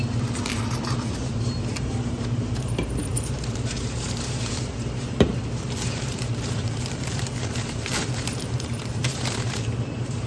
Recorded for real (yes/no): no